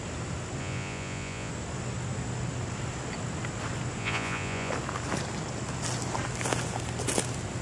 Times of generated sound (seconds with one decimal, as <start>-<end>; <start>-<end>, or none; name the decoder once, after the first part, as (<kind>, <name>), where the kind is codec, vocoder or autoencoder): 0.6-1.5 (vocoder, Vocos); 4.0-4.7